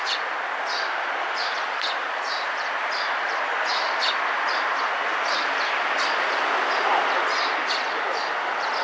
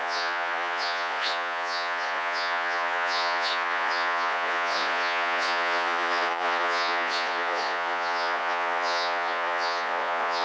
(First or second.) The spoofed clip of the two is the second